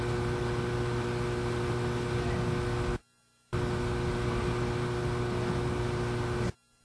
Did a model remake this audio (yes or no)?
no